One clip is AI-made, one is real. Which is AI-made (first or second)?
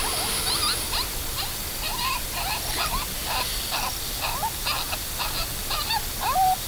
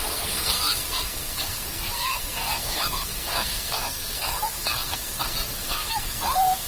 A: second